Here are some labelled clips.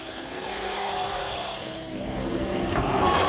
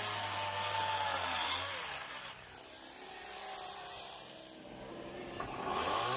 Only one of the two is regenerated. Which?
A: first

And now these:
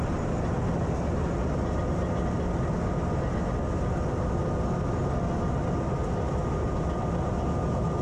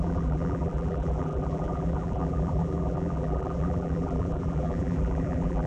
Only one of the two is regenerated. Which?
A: second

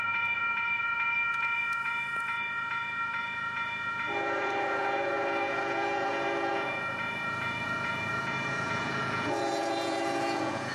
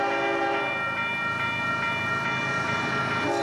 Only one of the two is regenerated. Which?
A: first